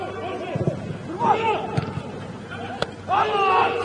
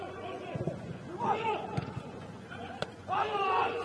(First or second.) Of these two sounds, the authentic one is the first